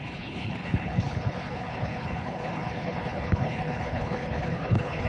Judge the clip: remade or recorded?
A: remade